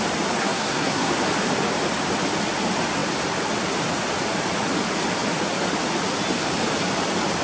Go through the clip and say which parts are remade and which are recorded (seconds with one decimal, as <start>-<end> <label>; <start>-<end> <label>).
0.0-0.4 recorded; 0.4-1.1 remade; 1.1-7.4 recorded